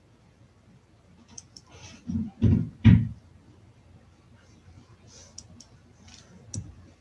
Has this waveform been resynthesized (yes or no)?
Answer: no